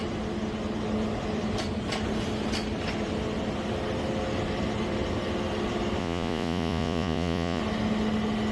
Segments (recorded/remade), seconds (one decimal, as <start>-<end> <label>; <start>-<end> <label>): 0.0-6.0 recorded; 6.0-7.6 remade; 7.6-8.5 recorded